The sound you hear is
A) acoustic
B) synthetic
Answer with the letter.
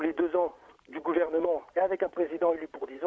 B